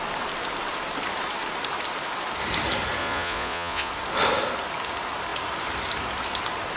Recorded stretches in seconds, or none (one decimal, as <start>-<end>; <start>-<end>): 0.0-3.0; 3.9-6.8